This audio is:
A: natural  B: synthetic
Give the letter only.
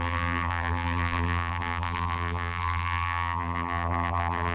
B